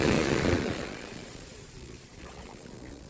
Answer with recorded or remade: remade